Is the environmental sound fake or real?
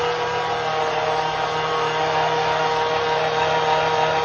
real